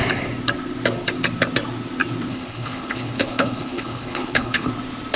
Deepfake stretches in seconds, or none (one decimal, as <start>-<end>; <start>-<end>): 2.3-4.7